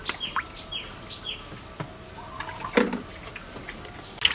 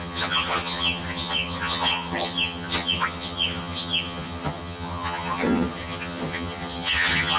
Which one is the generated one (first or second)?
second